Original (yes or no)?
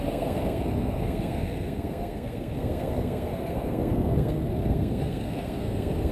no